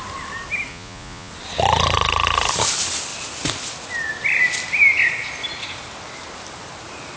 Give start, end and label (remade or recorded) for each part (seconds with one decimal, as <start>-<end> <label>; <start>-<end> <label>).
0.0-0.7 recorded; 0.7-1.3 remade; 1.3-7.2 recorded